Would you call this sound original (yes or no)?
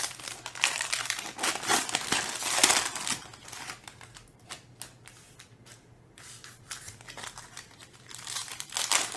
yes